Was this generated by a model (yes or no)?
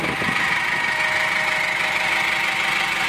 no